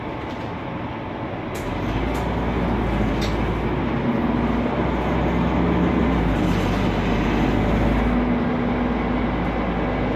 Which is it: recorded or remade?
recorded